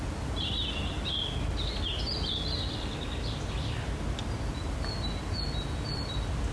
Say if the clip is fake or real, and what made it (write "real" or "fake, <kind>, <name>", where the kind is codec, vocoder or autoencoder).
real